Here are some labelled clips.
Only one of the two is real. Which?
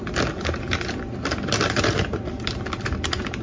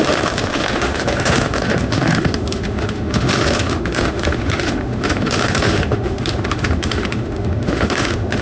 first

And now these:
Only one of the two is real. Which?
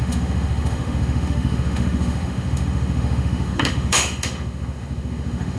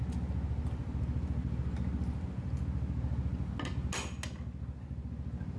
second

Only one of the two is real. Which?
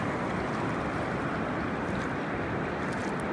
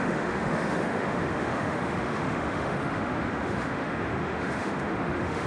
first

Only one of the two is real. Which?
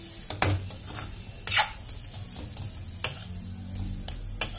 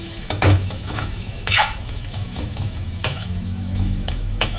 first